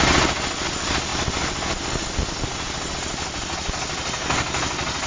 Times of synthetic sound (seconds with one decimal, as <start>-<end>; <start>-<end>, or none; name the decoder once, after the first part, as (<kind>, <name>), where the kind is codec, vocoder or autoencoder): none